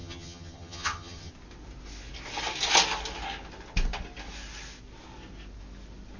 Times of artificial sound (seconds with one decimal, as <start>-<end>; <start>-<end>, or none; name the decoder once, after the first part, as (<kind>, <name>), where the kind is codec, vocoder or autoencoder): 0.0-1.3 (vocoder, HiFi-GAN)

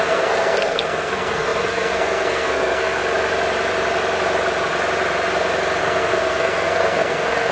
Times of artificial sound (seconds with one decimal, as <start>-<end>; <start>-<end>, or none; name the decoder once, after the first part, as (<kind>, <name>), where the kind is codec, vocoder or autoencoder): 0.0-3.0 (codec, SNAC); 5.8-7.5

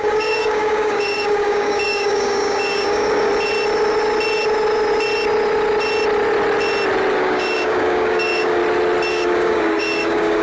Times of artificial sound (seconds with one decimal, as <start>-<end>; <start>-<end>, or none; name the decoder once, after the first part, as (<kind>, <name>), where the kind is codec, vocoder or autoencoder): 0.0-3.3 (codec, DAC); 7.2-8.6; 9.1-10.4

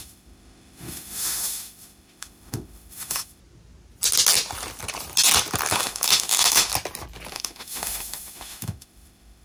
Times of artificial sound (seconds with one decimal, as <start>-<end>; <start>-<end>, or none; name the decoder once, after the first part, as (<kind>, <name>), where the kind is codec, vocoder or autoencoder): 0.0-3.4 (autoencoder, DAC-VAE); 5.7-6.7; 7.3-9.4

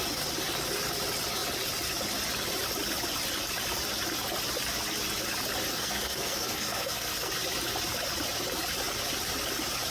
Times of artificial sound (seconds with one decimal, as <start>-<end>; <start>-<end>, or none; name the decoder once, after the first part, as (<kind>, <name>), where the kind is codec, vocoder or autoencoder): 5.7-7.3 (codec, SNAC)

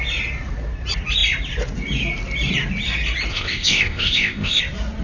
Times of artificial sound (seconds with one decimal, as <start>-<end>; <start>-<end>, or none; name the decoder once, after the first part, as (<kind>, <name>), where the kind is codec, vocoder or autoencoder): 3.3-4.6 (codec, ZipCodec)

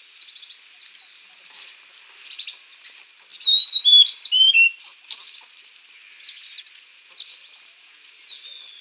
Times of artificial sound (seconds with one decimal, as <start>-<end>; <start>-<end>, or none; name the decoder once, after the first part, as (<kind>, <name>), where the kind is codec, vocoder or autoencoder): none

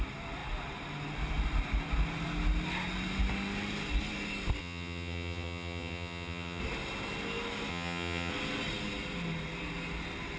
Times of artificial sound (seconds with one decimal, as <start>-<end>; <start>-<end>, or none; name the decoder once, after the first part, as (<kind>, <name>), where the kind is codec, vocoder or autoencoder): 4.6-6.6 (vocoder, HiFi-GAN); 7.7-8.3